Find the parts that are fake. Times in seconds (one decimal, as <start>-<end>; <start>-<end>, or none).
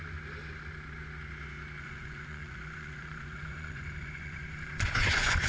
1.8-5.5